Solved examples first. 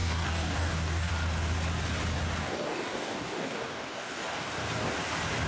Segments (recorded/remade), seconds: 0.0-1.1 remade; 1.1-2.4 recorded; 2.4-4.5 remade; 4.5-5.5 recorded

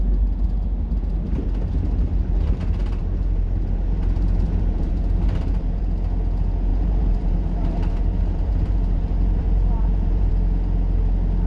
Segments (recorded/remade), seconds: 0.0-3.0 recorded; 3.0-5.8 remade; 5.8-6.7 recorded; 6.7-10.3 remade; 10.3-11.5 recorded

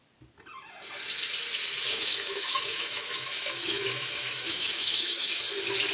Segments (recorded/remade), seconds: 0.0-1.9 recorded; 1.9-5.4 remade; 5.4-5.9 recorded

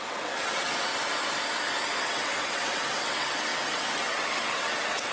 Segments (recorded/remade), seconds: 0.0-0.9 remade; 0.9-2.1 recorded; 2.1-5.1 remade

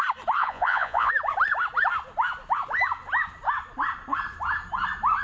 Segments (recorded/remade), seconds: 0.0-0.4 recorded; 0.4-1.1 remade; 1.1-5.2 recorded

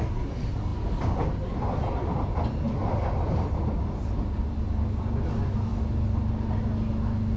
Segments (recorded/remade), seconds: 0.0-7.4 recorded